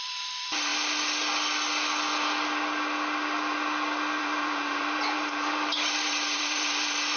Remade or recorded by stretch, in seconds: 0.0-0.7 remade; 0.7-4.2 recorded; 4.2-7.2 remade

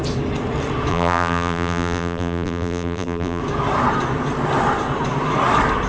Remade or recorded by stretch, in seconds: 0.0-0.9 recorded; 0.9-3.4 remade; 3.4-5.9 recorded

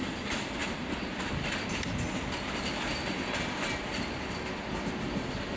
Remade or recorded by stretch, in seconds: 0.0-5.6 recorded

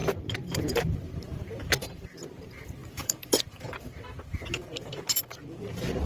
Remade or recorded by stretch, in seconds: 0.0-5.4 remade; 5.4-6.1 recorded

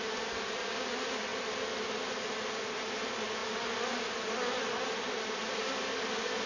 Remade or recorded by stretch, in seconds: 0.0-6.5 recorded

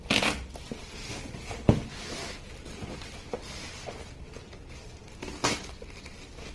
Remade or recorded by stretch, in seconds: 0.0-6.5 recorded

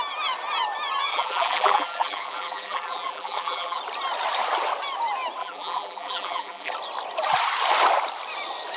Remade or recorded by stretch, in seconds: 0.0-1.1 recorded; 1.1-3.8 remade; 3.8-5.4 recorded; 5.4-6.7 remade; 6.7-8.8 recorded

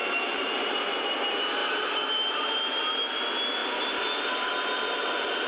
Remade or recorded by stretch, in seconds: 0.0-0.9 remade; 0.9-1.6 recorded; 1.6-3.2 remade; 3.2-3.6 recorded; 3.6-4.5 remade; 4.5-5.5 recorded